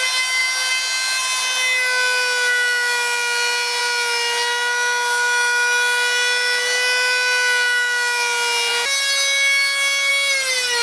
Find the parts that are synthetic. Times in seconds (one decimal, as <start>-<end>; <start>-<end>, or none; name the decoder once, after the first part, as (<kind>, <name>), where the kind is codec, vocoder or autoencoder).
none